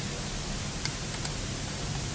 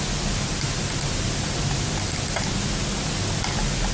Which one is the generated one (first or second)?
first